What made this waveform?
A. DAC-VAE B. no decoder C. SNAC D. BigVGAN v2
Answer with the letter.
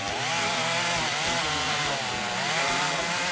D